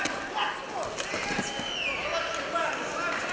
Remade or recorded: recorded